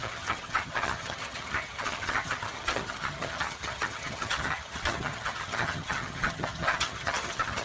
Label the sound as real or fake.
fake